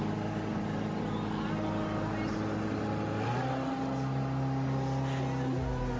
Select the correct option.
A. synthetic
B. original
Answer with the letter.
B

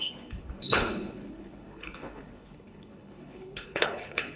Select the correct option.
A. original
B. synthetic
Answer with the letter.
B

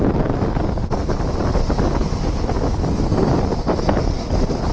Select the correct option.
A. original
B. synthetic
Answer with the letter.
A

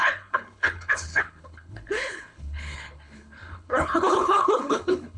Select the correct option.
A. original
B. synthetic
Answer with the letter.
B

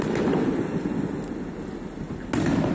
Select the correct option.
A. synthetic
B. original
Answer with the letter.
B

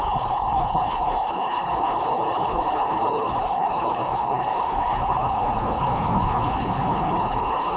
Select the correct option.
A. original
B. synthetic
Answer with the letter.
B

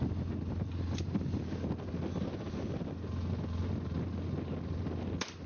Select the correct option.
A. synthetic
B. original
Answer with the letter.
B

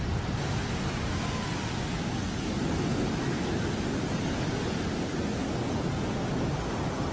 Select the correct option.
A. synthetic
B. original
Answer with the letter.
B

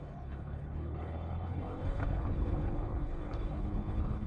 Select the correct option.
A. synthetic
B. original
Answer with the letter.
A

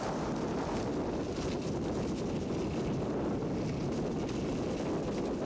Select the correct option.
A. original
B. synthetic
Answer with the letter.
A